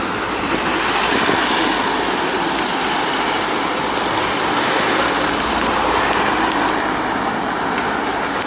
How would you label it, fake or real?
real